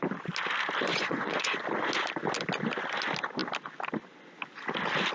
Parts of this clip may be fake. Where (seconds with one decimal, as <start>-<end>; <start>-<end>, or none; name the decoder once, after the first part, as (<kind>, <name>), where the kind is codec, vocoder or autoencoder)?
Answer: 0.9-1.6 (vocoder, Vocos)